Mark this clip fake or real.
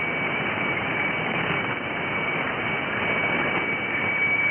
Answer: real